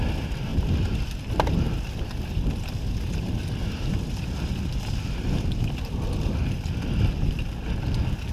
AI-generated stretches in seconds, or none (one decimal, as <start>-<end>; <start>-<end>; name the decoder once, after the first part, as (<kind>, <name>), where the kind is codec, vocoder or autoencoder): none